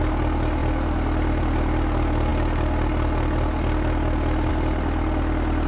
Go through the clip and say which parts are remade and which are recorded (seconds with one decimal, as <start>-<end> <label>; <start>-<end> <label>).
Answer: 0.0-0.6 recorded; 0.6-1.4 remade; 1.4-5.7 recorded